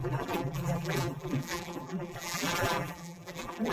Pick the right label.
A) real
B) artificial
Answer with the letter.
B